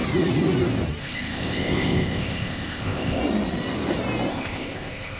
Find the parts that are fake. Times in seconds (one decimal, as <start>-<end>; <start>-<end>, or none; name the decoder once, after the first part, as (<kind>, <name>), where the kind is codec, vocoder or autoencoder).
1.0-3.2 (codec, ZipCodec); 4.3-5.2